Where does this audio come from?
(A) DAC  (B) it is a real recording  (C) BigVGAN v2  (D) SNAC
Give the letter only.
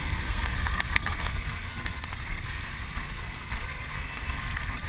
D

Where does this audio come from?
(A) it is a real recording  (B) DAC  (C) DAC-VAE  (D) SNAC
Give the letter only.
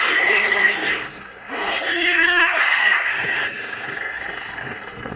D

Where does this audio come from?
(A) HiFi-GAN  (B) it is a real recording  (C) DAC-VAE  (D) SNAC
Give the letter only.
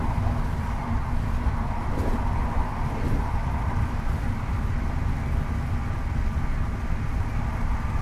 B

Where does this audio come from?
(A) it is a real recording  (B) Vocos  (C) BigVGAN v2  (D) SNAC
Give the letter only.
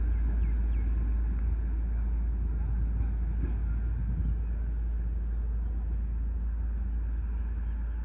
A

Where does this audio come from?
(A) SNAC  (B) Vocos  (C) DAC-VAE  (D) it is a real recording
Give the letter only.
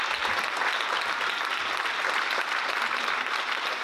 D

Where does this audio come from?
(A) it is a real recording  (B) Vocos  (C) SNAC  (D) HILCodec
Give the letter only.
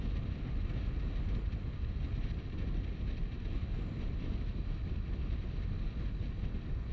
A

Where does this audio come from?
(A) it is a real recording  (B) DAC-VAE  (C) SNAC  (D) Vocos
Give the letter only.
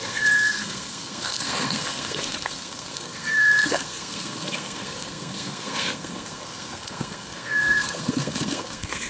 C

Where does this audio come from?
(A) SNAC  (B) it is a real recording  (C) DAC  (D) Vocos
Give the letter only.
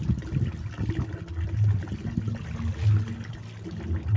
B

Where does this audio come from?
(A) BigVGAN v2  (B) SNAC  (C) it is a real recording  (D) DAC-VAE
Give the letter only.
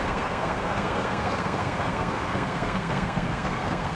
B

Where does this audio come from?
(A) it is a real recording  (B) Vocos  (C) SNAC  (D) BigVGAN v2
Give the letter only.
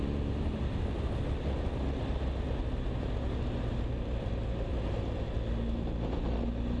A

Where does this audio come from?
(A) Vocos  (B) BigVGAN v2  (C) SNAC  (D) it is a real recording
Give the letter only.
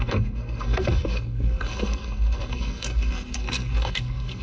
C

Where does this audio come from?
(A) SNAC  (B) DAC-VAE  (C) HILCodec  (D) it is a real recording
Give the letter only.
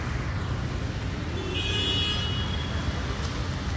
D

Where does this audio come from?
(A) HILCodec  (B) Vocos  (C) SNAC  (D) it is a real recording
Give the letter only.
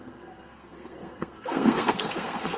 C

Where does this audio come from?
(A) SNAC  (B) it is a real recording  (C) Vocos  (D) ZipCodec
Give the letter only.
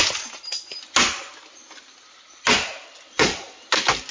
B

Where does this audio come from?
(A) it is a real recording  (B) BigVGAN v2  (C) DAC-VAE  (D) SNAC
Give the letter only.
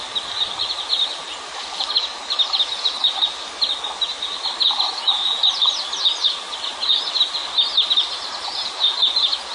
A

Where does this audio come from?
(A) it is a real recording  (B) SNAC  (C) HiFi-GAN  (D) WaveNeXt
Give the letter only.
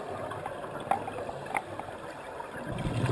A